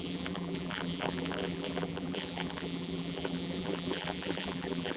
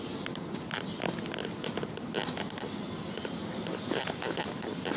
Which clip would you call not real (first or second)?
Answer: first